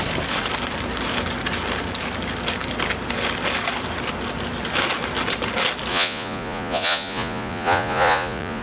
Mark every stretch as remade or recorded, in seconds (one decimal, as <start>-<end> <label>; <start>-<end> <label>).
0.0-5.9 recorded; 5.9-8.6 remade